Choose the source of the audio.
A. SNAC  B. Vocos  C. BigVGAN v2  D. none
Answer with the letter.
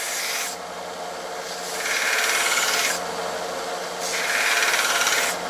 D